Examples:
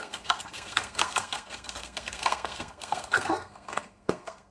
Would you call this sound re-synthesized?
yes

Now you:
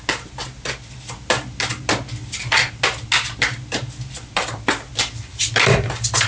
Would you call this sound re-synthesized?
no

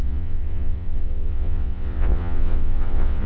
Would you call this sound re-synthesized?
yes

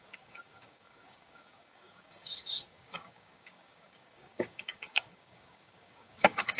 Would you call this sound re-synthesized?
yes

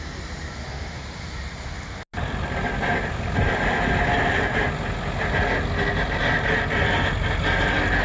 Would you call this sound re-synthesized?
no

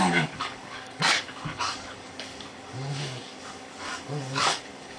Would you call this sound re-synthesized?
yes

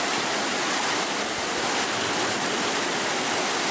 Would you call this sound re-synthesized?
no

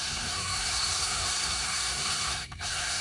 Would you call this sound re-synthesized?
yes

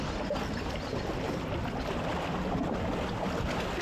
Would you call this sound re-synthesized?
no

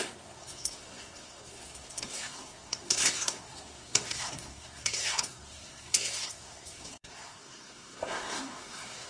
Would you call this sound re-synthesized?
yes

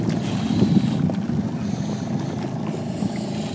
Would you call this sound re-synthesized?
no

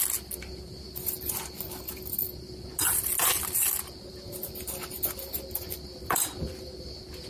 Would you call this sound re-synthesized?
no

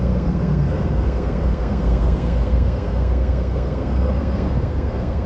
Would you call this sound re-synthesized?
yes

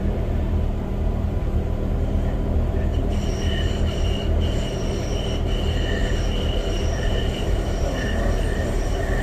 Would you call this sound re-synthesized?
yes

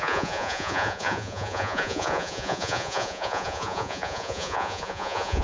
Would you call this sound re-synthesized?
yes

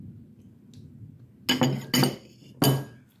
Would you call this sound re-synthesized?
no